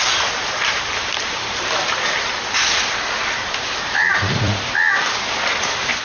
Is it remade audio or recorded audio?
remade